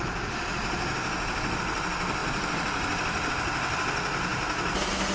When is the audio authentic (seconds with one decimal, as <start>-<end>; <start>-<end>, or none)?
0.0-2.2; 3.3-5.1